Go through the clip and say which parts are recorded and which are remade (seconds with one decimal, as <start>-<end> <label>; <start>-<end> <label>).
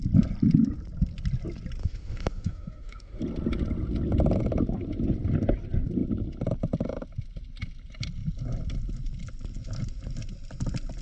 0.0-1.8 recorded; 1.8-3.2 remade; 3.2-11.0 recorded